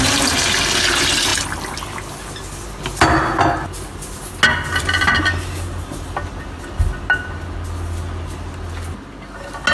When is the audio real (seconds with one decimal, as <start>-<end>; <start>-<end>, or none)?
0.0-9.7